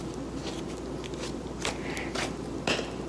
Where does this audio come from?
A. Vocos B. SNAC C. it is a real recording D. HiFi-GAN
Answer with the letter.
C